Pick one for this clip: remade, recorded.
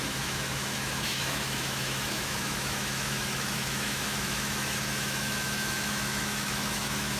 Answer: remade